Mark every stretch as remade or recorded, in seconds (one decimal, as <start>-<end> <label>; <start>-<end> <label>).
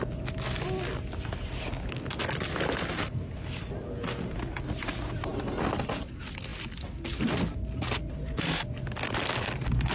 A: 0.0-9.9 recorded